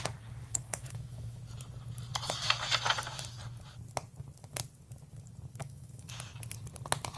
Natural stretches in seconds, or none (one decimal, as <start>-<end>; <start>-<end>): 0.0-0.5; 1.4-5.6; 6.1-7.2

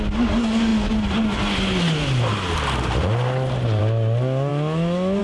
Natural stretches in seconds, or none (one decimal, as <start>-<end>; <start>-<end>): 0.0-5.2

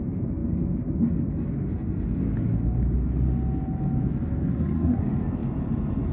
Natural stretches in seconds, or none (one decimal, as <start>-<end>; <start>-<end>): 0.0-4.5; 5.0-6.1

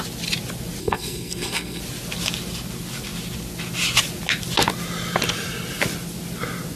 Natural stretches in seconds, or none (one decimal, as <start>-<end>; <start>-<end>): 0.0-0.8; 1.8-6.8

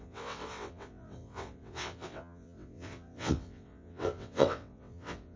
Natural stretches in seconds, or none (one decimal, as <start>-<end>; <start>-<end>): none

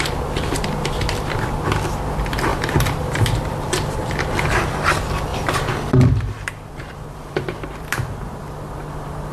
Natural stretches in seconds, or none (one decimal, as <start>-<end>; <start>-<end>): 0.0-2.5; 4.4-5.3; 8.8-9.3

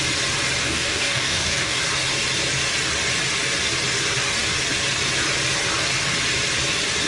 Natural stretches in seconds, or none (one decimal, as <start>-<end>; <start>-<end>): 0.0-0.6; 1.8-7.1

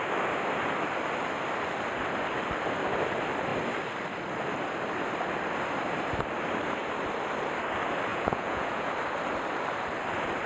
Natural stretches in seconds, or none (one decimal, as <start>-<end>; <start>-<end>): 0.0-8.1; 8.9-10.5